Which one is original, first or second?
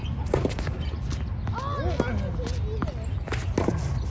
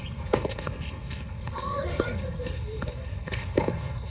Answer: first